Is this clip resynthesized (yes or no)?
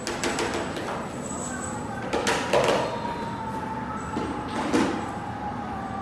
no